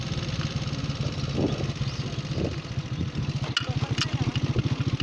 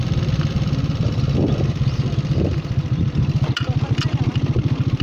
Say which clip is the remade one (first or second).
second